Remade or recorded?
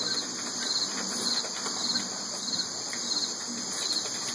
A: recorded